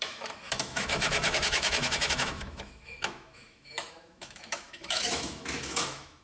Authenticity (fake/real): fake